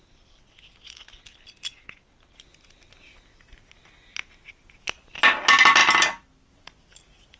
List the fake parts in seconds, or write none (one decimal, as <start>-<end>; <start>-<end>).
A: none